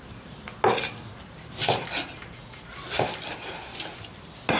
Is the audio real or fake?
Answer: real